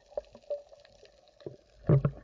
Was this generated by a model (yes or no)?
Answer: no